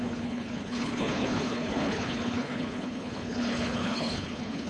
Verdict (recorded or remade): remade